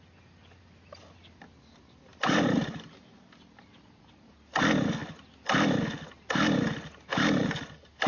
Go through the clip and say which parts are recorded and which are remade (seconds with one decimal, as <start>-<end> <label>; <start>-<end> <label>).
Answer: 0.0-2.1 recorded; 2.1-4.4 remade; 4.4-8.1 recorded